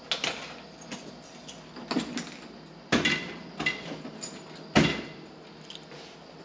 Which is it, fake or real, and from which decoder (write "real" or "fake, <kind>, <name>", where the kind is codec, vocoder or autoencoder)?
real